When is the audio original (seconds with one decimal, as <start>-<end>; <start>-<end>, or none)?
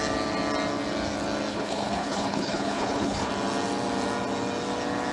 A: 0.0-1.5; 3.3-5.1